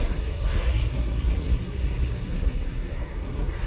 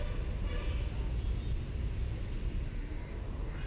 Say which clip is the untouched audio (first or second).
second